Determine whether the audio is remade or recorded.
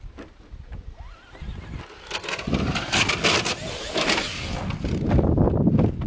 recorded